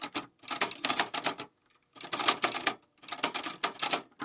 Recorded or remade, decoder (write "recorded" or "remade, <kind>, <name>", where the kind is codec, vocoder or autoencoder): recorded